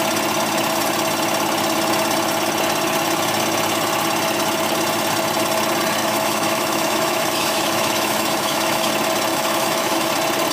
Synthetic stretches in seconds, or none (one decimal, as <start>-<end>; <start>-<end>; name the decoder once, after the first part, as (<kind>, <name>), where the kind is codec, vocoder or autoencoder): 6.0-8.9 (autoencoder, DAC-VAE); 9.3-10.1